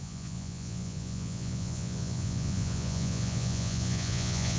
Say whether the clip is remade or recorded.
remade